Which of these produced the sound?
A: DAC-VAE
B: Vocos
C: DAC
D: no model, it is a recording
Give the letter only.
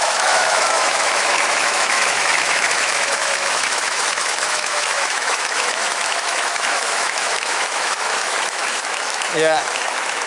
A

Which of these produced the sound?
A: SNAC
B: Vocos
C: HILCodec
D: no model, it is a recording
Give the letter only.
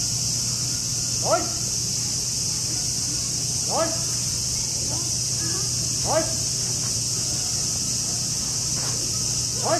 D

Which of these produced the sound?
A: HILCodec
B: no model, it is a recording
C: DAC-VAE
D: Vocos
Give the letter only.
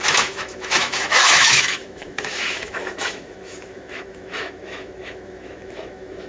C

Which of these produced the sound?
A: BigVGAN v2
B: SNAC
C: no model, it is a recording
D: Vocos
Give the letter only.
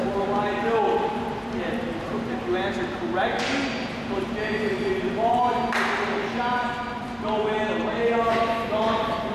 C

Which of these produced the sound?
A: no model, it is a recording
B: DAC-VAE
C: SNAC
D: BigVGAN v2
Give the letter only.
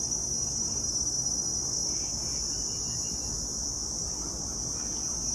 A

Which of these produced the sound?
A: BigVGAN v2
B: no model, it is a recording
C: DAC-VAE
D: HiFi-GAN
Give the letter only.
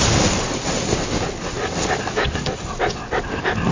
B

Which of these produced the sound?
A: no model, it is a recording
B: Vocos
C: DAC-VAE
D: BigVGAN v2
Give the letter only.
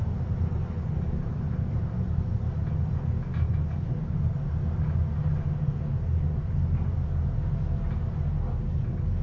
A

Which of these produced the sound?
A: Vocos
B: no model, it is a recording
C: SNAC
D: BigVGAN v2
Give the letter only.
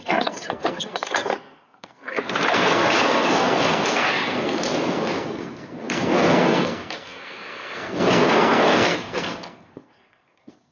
C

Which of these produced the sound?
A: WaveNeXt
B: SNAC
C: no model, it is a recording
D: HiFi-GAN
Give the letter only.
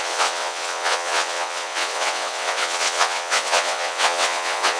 A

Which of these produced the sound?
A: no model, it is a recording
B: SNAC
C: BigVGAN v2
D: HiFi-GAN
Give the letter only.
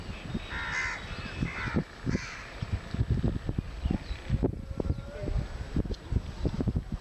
A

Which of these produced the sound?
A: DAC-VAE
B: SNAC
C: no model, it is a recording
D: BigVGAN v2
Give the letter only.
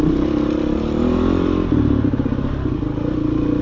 C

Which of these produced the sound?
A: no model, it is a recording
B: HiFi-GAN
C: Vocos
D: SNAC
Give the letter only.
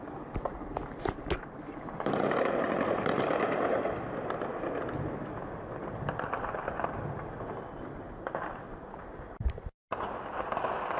A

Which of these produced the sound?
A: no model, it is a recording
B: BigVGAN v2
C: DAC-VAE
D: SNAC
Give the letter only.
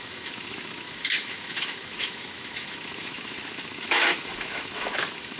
C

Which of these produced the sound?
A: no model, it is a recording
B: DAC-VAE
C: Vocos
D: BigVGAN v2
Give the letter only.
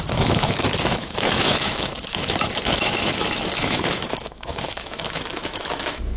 B